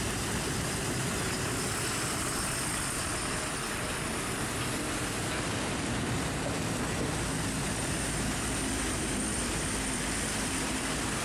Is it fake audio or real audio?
fake